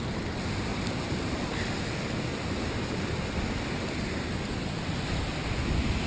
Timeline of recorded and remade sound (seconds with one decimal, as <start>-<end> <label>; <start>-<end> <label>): 0.0-6.1 recorded